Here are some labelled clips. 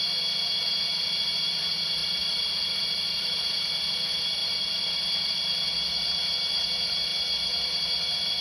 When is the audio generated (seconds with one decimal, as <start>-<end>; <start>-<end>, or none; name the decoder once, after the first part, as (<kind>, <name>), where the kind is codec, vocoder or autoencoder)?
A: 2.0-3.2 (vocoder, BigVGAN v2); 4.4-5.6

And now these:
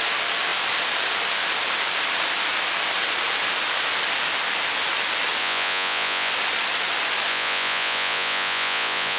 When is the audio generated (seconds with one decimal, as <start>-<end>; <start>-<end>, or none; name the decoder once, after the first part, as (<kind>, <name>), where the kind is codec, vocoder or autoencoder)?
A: 5.4-6.3 (vocoder, Vocos); 7.3-9.2

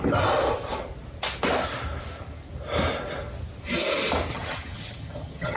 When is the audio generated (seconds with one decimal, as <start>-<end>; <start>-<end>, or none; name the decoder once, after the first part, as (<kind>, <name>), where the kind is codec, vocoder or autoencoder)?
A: 4.3-5.6 (vocoder, HiFi-GAN)